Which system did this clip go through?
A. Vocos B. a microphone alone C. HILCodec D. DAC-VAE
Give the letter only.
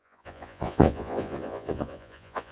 A